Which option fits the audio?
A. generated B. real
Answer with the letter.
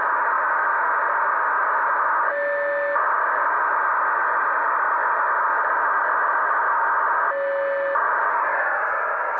B